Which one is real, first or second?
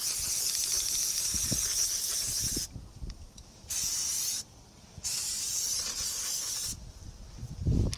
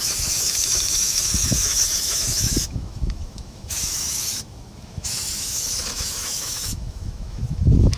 first